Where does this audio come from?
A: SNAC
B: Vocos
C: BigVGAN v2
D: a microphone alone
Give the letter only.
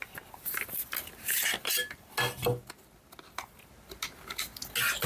D